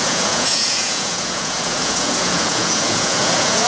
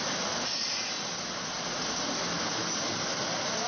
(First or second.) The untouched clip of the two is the second